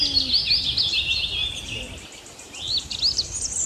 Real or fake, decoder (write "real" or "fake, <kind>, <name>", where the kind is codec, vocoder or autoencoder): real